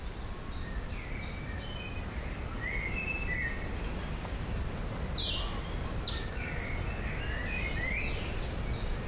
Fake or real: real